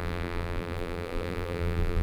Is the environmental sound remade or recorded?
remade